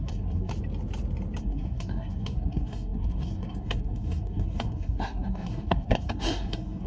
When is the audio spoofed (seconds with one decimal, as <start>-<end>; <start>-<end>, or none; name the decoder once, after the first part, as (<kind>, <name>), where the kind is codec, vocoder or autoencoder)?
0.0-0.5 (codec, SNAC); 1.4-6.9